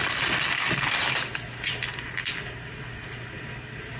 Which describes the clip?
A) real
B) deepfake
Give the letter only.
A